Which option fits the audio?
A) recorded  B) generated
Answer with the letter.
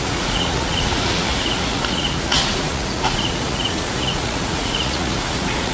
B